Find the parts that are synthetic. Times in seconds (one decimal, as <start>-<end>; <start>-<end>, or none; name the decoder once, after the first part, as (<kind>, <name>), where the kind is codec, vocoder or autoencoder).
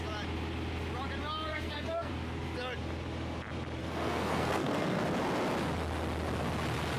1.5-2.1 (codec, SNAC); 3.8-5.0